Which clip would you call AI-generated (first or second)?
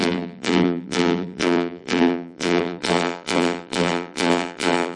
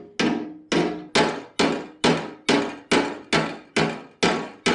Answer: first